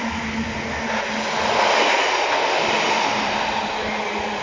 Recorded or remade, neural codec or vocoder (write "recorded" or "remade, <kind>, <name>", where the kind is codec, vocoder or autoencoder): recorded